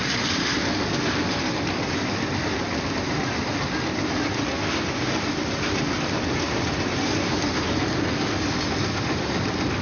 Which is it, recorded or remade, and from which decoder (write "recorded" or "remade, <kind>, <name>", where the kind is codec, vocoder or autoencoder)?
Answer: recorded